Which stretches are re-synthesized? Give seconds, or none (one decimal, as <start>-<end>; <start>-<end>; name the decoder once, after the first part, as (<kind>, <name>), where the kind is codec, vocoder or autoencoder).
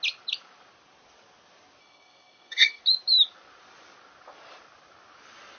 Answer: 1.8-2.8 (codec, SNAC)